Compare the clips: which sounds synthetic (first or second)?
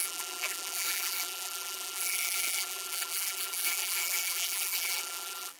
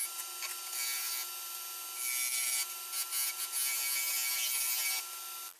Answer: first